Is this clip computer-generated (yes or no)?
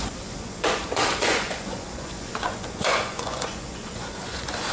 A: yes